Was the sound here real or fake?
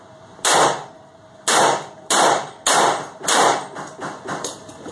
real